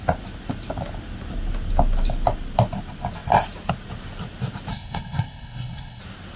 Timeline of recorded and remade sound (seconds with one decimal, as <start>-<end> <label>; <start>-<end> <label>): 0.0-4.7 recorded; 4.7-6.0 remade; 6.0-6.4 recorded